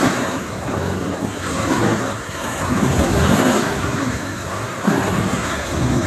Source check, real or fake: fake